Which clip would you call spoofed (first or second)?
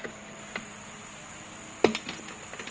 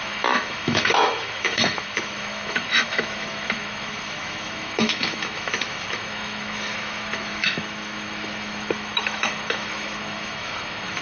second